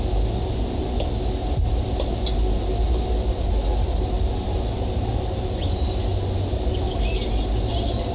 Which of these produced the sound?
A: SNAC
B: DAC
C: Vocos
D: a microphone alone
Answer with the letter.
D